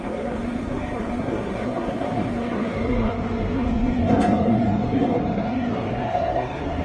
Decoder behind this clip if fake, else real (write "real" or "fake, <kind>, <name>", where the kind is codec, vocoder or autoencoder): fake, codec, SNAC